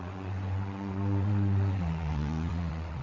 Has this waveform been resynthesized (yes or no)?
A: yes